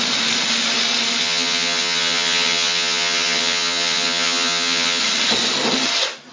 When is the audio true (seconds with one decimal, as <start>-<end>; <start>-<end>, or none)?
0.0-1.2; 5.0-6.3